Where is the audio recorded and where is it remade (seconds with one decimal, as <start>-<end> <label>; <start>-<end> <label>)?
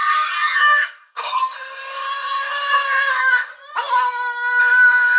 0.0-3.5 remade; 3.5-4.6 recorded; 4.6-5.2 remade